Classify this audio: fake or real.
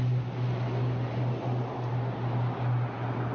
real